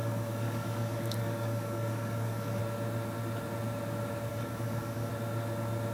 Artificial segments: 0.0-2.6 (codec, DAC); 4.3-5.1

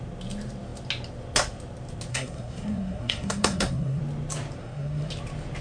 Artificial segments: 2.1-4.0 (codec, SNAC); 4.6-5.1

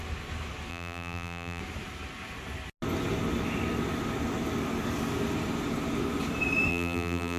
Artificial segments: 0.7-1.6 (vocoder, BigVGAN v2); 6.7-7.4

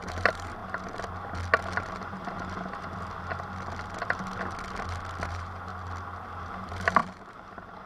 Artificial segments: 0.0-0.6 (vocoder, BigVGAN v2); 5.3-5.7; 6.5-7.9

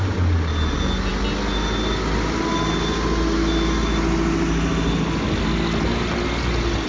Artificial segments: none

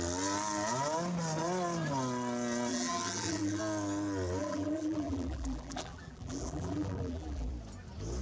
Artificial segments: 2.7-3.6 (vocoder, BigVGAN v2); 4.4-7.5

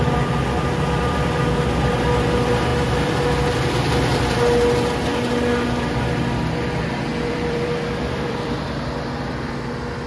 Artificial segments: 7.1-9.5 (vocoder, BigVGAN v2)

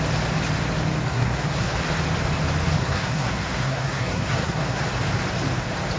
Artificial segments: 1.1-1.7 (codec, SNAC); 2.8-4.8